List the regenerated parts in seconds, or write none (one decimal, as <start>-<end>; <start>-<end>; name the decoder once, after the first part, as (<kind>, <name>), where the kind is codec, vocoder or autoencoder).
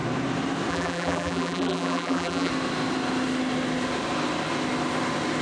0.7-2.5 (vocoder, BigVGAN v2)